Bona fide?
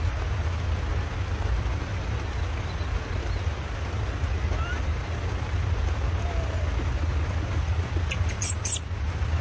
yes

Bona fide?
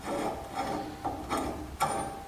yes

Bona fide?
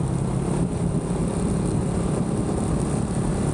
yes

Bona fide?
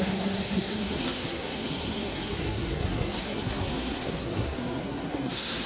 no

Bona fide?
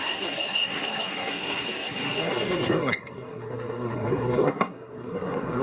no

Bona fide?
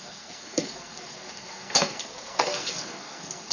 no